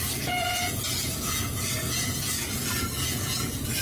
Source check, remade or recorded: remade